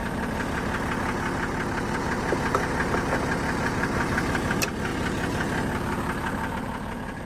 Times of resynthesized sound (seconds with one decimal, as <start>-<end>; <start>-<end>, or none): none